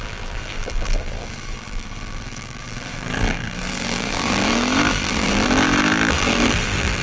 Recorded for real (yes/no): no